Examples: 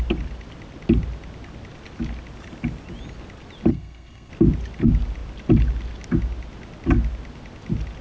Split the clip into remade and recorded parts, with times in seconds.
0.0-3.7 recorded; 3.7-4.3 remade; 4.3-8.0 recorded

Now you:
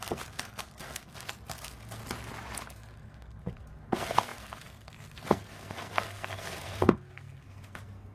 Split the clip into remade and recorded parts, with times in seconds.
0.0-2.0 remade; 2.0-2.7 recorded; 2.7-8.1 remade

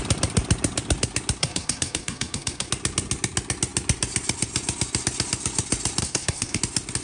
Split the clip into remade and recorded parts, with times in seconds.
0.0-1.4 recorded; 1.4-2.7 remade; 2.7-6.0 recorded; 6.0-6.6 remade; 6.6-7.0 recorded

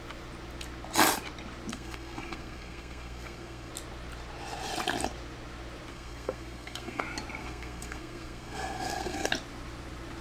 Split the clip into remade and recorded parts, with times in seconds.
0.0-1.7 recorded; 1.7-3.7 remade; 3.7-5.9 recorded; 5.9-7.0 remade; 7.0-7.4 recorded; 7.4-9.3 remade; 9.3-10.2 recorded

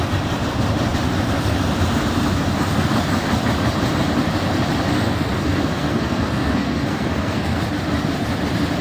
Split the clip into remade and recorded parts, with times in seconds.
0.0-4.9 recorded; 4.9-7.6 remade; 7.6-8.8 recorded

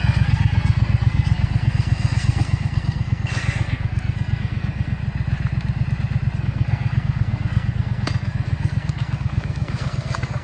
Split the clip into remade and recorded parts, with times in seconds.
0.0-5.0 remade; 5.0-6.4 recorded; 6.4-10.4 remade

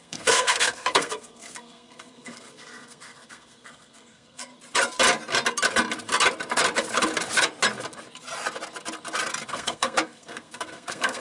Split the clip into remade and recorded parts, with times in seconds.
0.0-4.5 remade; 4.5-9.5 recorded; 9.5-11.2 remade

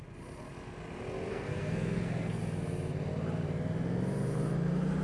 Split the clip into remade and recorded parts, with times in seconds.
0.0-1.3 recorded; 1.3-2.4 remade; 2.4-5.0 recorded